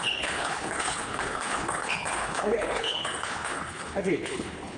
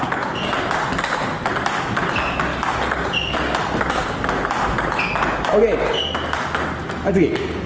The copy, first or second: first